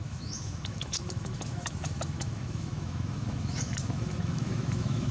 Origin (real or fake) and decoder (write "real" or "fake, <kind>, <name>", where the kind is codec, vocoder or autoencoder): fake, autoencoder, DAC-VAE